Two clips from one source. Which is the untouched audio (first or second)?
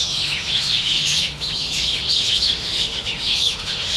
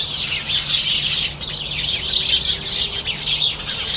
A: second